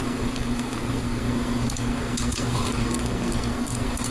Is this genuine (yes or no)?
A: no